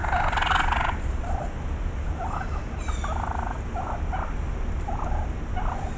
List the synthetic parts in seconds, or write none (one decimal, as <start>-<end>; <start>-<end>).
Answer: none